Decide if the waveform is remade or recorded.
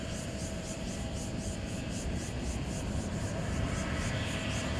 remade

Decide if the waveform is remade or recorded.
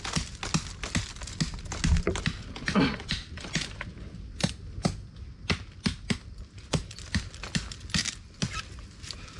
recorded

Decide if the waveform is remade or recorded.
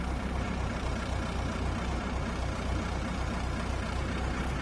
recorded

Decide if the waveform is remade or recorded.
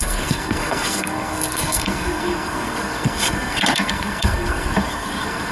remade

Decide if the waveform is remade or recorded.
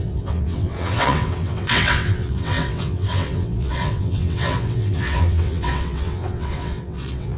remade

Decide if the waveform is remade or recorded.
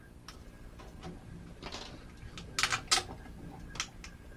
recorded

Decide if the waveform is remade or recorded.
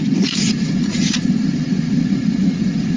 remade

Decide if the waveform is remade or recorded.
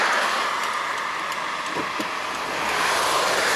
recorded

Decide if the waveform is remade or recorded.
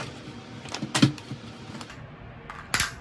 recorded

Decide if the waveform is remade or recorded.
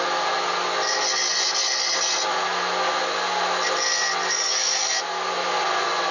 recorded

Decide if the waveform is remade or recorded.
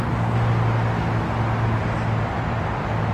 recorded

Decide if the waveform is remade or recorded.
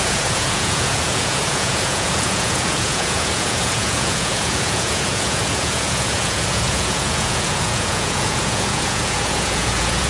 remade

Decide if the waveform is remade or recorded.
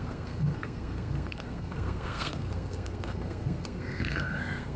remade